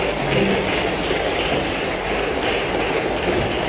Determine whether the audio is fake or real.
real